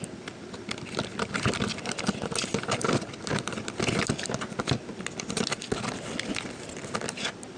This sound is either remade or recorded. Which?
recorded